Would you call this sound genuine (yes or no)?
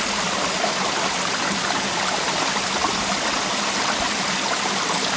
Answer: yes